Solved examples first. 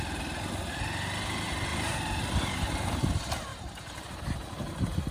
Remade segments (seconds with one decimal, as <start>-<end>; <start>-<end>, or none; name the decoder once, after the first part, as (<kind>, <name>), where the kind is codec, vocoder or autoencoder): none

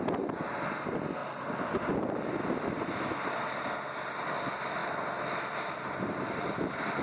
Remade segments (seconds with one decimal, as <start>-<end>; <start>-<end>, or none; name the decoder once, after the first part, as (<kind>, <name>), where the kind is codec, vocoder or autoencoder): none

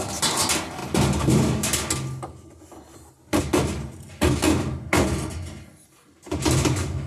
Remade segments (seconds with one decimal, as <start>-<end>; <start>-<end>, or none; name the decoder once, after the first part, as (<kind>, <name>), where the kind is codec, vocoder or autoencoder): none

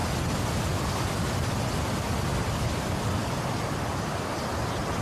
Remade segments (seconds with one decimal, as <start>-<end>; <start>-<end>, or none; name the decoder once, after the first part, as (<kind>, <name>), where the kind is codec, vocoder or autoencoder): none

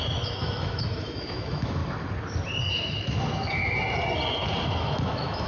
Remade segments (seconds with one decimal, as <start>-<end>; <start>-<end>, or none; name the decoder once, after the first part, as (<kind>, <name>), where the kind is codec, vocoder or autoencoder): 0.0-1.8 (autoencoder, DAC-VAE); 2.7-3.6; 4.6-5.5

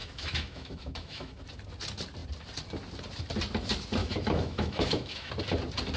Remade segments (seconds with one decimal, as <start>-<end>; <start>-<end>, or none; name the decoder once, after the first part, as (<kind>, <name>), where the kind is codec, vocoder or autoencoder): 0.0-1.4 (autoencoder, DAC-VAE); 4.0-5.3

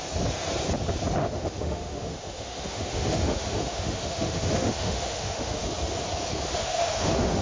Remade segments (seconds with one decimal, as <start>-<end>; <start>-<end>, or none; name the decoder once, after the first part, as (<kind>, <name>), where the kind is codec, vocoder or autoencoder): 1.2-5.6 (autoencoder, DAC-VAE); 6.5-7.4